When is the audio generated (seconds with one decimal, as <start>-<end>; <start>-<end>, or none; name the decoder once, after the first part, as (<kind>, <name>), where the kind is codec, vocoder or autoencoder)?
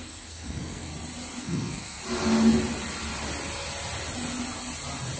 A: 0.0-0.9 (codec, SNAC); 1.4-2.0